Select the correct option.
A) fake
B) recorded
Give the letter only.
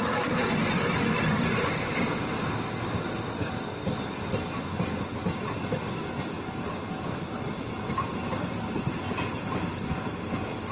B